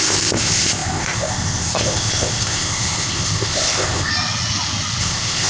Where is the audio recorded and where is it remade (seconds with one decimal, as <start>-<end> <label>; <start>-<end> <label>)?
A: 0.0-4.1 remade; 4.1-5.0 recorded; 5.0-5.5 remade

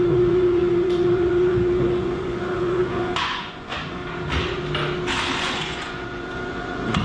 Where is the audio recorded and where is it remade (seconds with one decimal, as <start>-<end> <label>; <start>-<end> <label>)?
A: 0.0-4.0 remade; 4.0-5.4 recorded; 5.4-7.0 remade